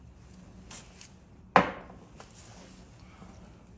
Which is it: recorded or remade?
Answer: recorded